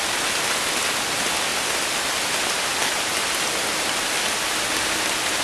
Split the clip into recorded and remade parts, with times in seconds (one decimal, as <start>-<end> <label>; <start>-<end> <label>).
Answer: 0.0-5.4 recorded